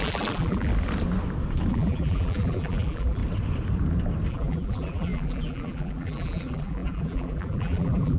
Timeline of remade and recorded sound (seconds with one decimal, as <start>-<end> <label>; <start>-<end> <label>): 0.0-0.7 remade; 0.7-1.7 recorded; 1.7-3.2 remade; 3.2-4.3 recorded; 4.3-8.2 remade